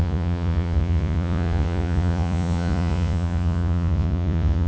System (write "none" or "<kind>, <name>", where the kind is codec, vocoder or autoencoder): vocoder, Vocos